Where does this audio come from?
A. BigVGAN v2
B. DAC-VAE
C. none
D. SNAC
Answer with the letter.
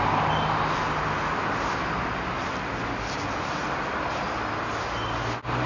C